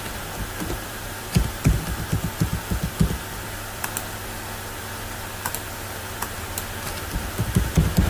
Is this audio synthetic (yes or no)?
yes